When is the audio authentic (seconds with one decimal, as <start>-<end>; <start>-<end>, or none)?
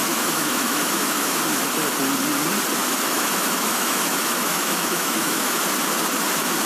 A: 1.4-2.8; 5.6-6.7